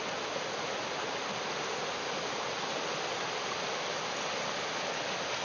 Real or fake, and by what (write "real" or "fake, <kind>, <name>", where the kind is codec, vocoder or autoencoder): real